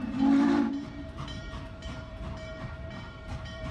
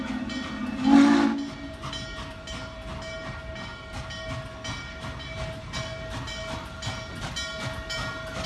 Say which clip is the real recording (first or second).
second